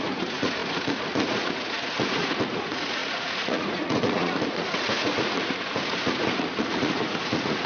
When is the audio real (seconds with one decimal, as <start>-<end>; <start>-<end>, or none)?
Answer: none